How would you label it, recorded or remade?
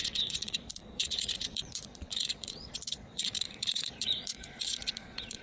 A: remade